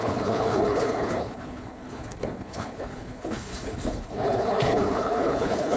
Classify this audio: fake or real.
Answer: fake